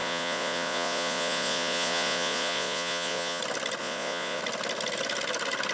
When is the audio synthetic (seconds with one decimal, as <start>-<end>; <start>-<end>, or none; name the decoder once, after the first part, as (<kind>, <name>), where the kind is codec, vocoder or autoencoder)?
0.0-3.4 (vocoder, Vocos); 3.8-4.4